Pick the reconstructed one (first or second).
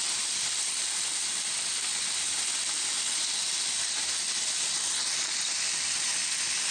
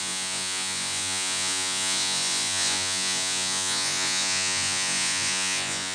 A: second